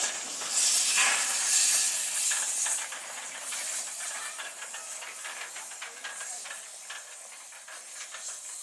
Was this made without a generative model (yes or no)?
yes